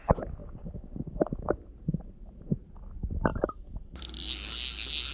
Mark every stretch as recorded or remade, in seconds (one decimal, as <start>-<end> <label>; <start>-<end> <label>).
0.0-0.4 recorded; 0.4-2.1 remade; 2.1-3.3 recorded; 3.3-4.0 remade; 4.0-5.1 recorded